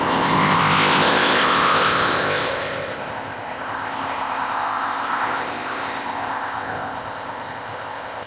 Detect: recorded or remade remade